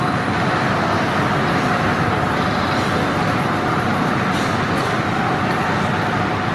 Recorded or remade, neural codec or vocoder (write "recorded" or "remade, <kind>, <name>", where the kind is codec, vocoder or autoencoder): recorded